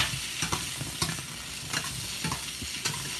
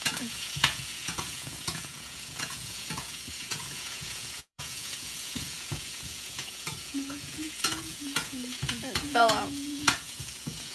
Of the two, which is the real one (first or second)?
first